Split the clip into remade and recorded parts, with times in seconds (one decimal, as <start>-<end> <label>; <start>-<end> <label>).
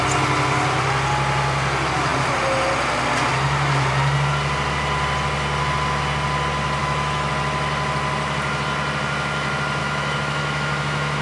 0.0-6.8 recorded; 6.8-7.3 remade; 7.3-9.8 recorded; 9.8-11.2 remade